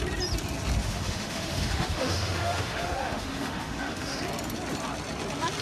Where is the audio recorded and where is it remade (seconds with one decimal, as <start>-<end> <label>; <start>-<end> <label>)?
0.0-0.8 recorded; 0.8-4.2 remade; 4.2-5.6 recorded